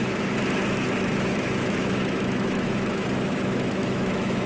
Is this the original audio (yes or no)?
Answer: no